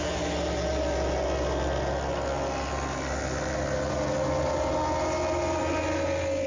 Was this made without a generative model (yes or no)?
yes